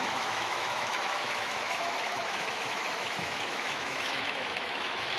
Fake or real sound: fake